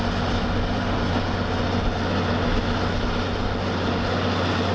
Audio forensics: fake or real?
real